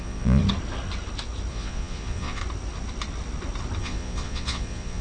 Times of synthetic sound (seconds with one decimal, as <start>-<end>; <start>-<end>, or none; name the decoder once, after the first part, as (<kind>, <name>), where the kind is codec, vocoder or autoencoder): 0.0-0.4 (vocoder, Vocos); 1.5-2.4; 3.8-5.0